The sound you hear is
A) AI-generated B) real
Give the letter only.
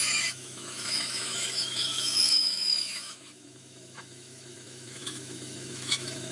A